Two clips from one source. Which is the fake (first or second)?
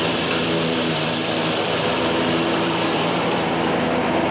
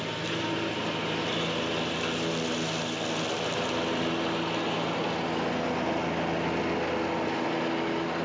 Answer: first